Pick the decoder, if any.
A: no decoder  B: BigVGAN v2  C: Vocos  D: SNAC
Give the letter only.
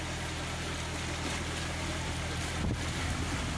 A